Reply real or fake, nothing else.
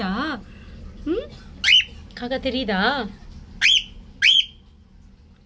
real